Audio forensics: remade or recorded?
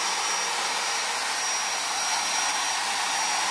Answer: recorded